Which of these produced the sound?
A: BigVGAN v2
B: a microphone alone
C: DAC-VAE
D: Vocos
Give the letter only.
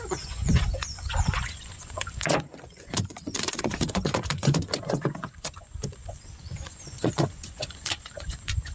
D